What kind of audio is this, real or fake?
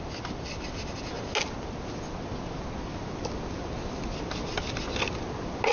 real